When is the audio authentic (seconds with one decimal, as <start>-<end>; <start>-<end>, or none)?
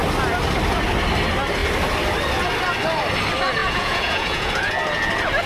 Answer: 0.0-3.6; 4.5-5.5